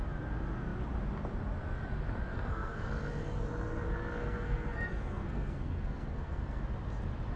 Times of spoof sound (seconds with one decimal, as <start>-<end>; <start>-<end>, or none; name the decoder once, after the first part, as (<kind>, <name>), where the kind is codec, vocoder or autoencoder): 2.3-2.9 (codec, SNAC); 4.2-6.6

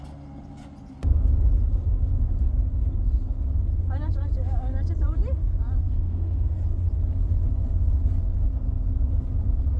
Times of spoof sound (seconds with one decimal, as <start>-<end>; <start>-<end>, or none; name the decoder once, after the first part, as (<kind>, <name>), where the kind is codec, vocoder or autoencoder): 5.8-6.6 (codec, SNAC)

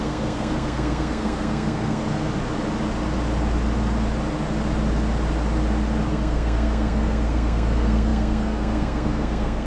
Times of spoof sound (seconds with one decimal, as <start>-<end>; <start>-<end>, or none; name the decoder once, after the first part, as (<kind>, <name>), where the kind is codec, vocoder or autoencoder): 0.0-2.0 (codec, SNAC); 6.1-9.7

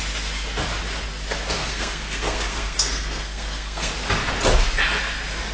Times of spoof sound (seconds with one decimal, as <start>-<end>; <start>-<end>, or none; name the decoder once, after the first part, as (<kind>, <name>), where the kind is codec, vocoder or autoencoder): 1.6-3.9 (codec, SNAC)